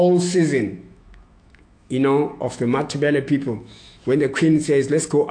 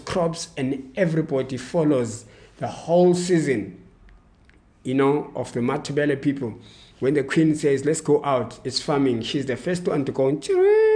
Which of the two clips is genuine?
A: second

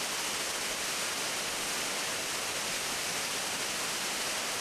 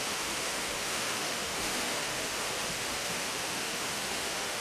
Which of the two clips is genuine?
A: first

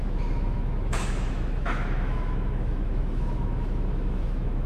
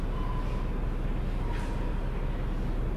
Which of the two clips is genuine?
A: second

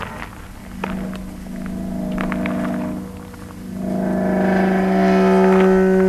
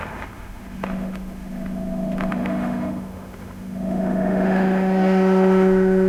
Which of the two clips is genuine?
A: first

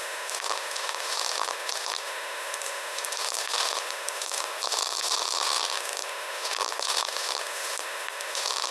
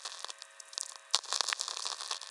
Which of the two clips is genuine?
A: second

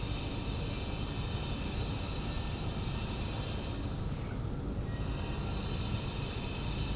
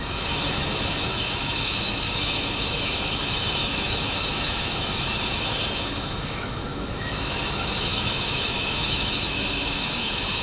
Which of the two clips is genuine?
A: first